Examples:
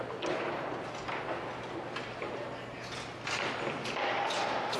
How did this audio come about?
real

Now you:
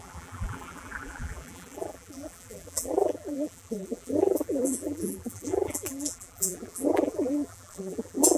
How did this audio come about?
fake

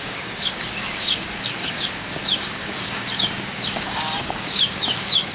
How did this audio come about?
fake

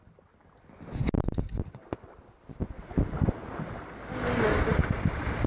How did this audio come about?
real